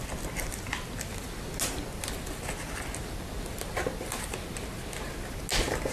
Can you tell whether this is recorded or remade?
recorded